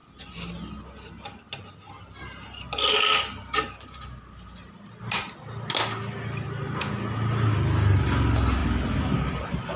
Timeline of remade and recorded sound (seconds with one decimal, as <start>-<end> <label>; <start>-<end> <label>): 0.0-9.8 recorded